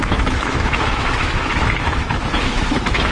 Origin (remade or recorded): remade